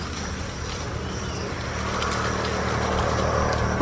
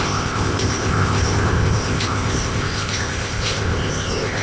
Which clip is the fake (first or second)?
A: second